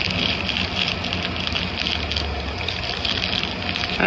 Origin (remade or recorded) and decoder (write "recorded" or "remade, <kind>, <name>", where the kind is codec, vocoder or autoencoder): recorded